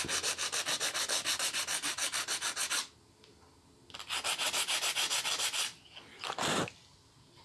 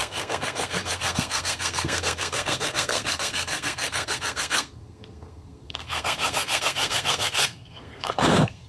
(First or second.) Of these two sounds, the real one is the first